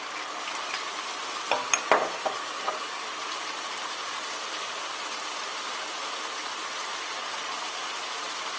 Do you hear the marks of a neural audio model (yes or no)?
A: no